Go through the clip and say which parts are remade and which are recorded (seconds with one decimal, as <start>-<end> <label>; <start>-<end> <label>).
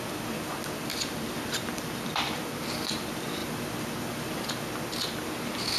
0.0-0.9 recorded; 0.9-2.4 remade; 2.4-5.8 recorded